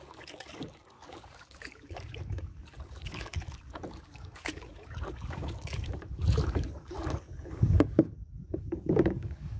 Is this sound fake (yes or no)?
yes